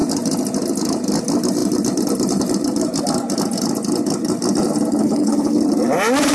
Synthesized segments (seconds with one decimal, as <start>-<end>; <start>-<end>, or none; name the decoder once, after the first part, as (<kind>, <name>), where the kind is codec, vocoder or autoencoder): 5.0-5.6 (codec, HILCodec)